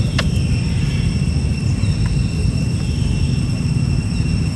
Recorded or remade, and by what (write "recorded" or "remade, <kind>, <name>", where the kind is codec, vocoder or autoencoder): recorded